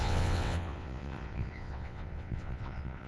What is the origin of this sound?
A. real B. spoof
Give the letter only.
B